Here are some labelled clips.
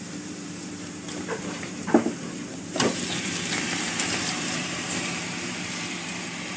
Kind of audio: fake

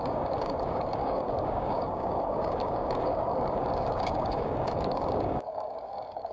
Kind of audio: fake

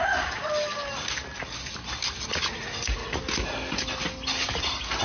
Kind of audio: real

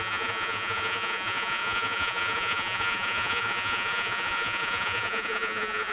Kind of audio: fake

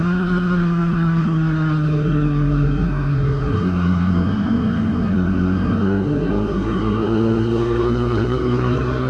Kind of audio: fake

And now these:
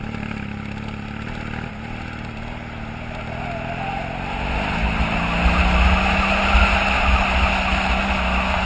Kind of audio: real